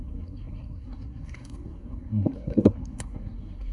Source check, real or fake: fake